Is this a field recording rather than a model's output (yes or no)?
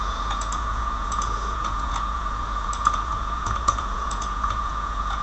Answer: no